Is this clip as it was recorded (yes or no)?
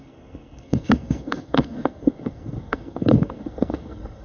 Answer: no